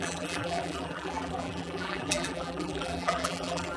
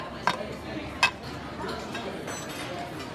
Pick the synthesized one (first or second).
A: first